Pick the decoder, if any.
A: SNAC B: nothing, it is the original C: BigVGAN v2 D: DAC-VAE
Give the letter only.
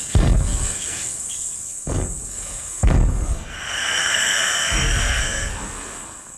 A